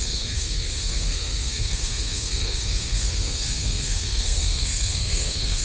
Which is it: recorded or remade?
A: remade